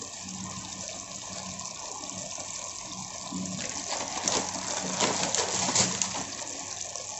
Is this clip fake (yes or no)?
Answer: no